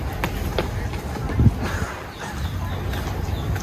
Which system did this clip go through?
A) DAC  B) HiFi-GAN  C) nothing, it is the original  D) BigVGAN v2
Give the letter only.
C